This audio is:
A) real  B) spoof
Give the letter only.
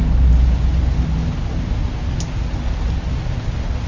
A